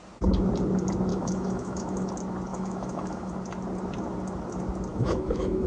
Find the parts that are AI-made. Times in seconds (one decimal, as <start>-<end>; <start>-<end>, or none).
1.1-2.1; 2.5-3.3; 4.9-5.7